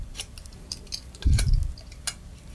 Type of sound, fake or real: real